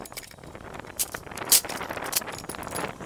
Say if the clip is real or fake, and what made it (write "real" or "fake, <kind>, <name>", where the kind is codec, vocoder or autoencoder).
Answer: fake, vocoder, BigVGAN v2